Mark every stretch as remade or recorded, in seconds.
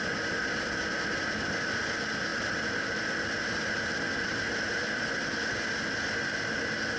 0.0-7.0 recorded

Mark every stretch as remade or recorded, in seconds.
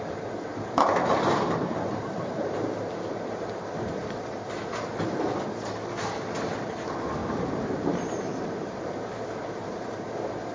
0.0-4.9 remade; 4.9-6.5 recorded; 6.5-10.5 remade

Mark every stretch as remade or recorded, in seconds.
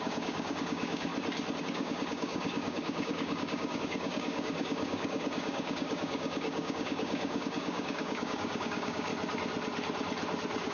0.0-1.1 remade; 1.1-1.6 recorded; 1.6-9.1 remade; 9.1-10.7 recorded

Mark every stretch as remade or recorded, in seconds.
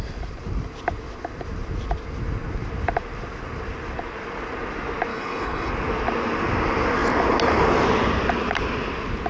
0.0-5.1 recorded; 5.1-5.7 remade; 5.7-9.3 recorded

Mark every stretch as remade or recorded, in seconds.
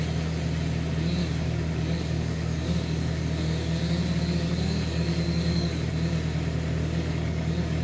0.0-1.2 recorded; 1.2-5.9 remade; 5.9-6.8 recorded; 6.8-7.8 remade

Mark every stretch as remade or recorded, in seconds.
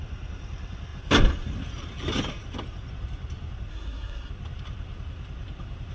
0.0-3.7 recorded; 3.7-4.3 remade; 4.3-5.9 recorded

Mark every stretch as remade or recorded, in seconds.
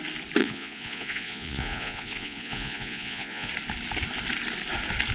0.0-0.4 recorded; 0.4-3.5 remade; 3.5-5.1 recorded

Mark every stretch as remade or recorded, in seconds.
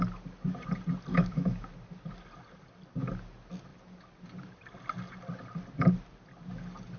0.0-1.1 recorded; 1.1-1.7 remade; 1.7-7.0 recorded